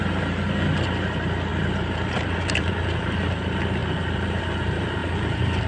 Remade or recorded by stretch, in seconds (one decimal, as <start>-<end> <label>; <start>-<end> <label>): 0.0-1.5 recorded; 1.5-2.7 remade; 2.7-5.7 recorded